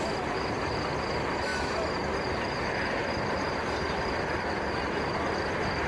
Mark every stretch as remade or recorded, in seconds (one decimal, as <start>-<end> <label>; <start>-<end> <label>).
0.0-3.0 recorded; 3.0-3.8 remade; 3.8-5.9 recorded